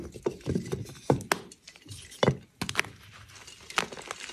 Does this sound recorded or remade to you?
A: recorded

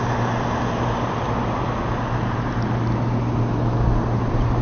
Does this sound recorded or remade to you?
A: recorded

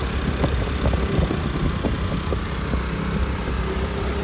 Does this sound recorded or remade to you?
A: recorded